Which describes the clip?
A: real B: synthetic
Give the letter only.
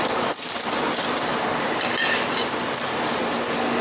A